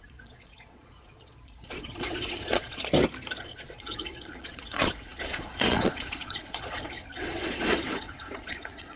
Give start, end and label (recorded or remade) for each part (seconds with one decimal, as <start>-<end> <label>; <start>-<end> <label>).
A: 0.0-2.8 remade; 2.8-3.4 recorded; 3.4-9.0 remade